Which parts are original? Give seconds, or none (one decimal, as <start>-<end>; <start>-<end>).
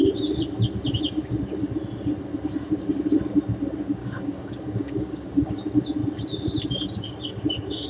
0.0-4.0; 5.6-7.9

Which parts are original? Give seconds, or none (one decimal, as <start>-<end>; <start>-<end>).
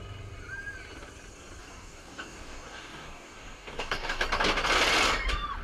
0.0-1.6; 4.2-5.6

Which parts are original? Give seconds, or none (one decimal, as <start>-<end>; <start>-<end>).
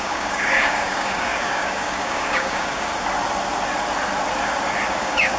2.9-5.0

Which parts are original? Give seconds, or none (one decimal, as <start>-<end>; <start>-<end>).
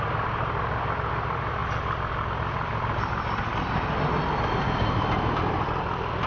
0.0-6.3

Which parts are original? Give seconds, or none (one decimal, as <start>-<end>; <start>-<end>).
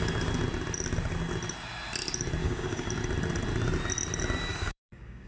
0.0-2.4; 2.9-4.5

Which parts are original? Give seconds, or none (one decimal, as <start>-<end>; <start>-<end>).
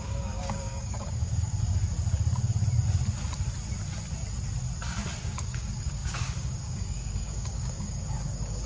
1.5-5.2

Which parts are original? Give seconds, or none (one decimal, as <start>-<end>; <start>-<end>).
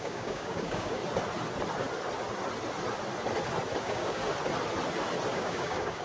1.0-3.8; 4.2-5.3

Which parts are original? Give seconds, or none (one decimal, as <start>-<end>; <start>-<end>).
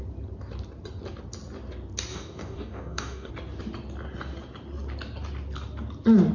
0.0-2.1; 3.3-6.3